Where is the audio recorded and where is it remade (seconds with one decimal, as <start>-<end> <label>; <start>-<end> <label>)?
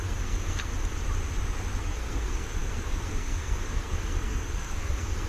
0.0-0.7 remade; 0.7-1.8 recorded; 1.8-5.3 remade